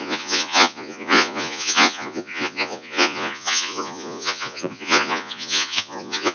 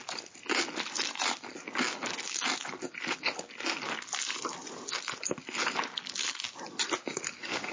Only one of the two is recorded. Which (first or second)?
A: second